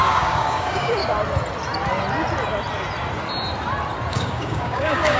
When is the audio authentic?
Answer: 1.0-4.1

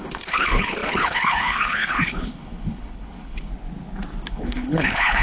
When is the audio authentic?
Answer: 3.5-4.3

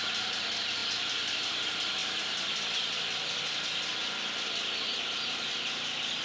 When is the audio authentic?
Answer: 0.0-2.0; 3.4-6.2

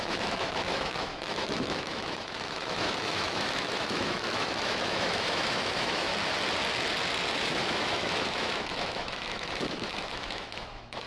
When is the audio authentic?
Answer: 6.1-7.3

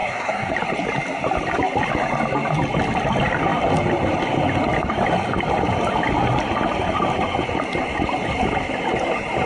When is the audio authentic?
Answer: 0.5-9.5

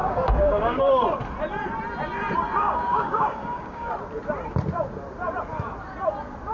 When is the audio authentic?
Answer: 0.8-2.6; 3.9-6.5